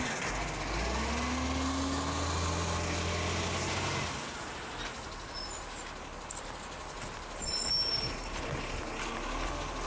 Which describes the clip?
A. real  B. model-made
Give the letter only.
A